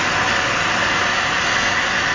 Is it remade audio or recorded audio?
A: recorded